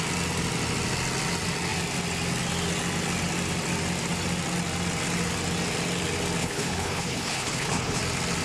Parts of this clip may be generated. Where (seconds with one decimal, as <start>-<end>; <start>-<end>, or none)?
6.4-8.0